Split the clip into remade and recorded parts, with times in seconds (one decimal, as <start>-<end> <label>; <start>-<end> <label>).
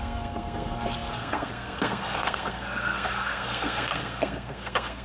0.0-5.0 remade